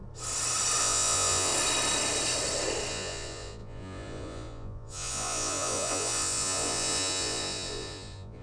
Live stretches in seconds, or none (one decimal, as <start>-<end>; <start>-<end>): 0.0-0.8; 1.5-2.9